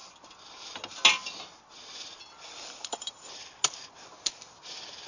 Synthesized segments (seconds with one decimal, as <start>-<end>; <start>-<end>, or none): none